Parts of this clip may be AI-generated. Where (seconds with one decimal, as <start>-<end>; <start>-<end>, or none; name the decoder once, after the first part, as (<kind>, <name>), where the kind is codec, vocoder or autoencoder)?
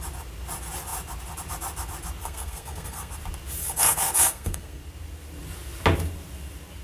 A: 2.2-3.1 (codec, SNAC); 3.6-4.8